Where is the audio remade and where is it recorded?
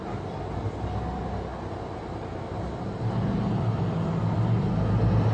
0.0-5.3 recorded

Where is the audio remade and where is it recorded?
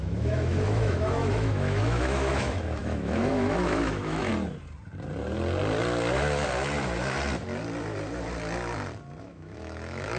0.0-4.3 remade; 4.3-9.2 recorded; 9.2-10.2 remade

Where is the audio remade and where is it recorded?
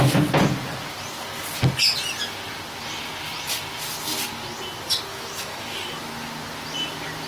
0.0-5.1 recorded; 5.1-5.8 remade; 5.8-7.3 recorded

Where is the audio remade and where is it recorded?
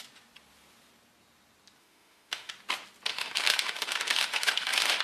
0.0-1.8 recorded; 1.8-2.5 remade; 2.5-3.1 recorded; 3.1-5.0 remade